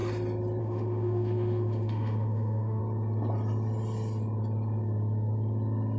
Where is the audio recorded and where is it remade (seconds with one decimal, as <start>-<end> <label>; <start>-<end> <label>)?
0.0-0.6 recorded; 0.6-2.8 remade; 2.8-6.0 recorded